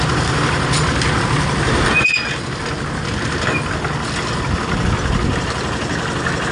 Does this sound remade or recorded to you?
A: recorded